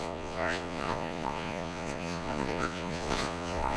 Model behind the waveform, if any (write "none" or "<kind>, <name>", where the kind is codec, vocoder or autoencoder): vocoder, Vocos